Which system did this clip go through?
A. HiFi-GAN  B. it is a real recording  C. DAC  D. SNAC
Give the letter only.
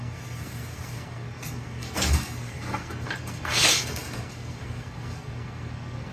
D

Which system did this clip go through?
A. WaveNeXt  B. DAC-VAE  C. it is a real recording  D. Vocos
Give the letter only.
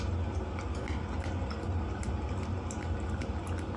C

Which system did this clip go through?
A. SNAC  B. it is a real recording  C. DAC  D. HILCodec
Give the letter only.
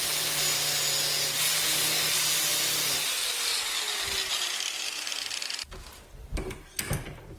B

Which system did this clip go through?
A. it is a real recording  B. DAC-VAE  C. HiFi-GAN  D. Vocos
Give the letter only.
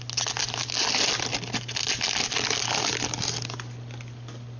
A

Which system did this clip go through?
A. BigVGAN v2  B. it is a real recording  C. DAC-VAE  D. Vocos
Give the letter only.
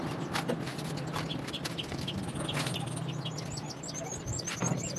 B